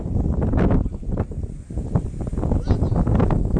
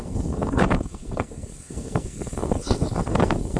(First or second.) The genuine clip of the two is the first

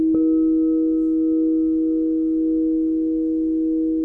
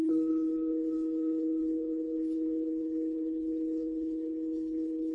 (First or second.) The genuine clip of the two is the first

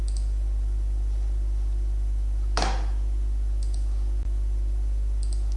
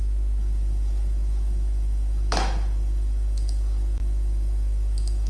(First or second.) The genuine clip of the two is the first